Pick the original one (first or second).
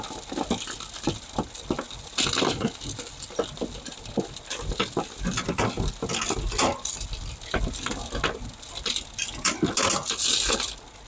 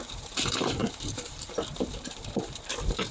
first